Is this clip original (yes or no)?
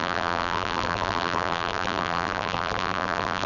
no